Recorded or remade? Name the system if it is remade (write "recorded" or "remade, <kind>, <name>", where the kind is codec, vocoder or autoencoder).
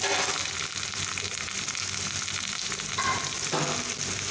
recorded